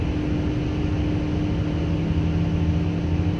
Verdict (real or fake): real